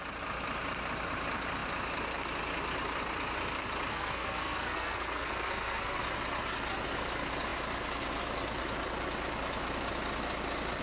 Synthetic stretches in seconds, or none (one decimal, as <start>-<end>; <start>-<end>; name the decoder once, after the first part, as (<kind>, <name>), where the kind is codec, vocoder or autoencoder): 3.9-6.0 (codec, SNAC)